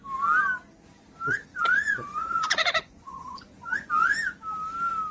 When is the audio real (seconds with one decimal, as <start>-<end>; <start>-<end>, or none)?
0.0-1.5; 3.9-5.1